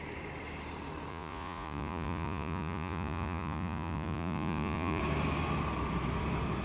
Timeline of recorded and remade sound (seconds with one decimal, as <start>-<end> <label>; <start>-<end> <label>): 0.0-1.1 recorded; 1.1-5.0 remade; 5.0-6.6 recorded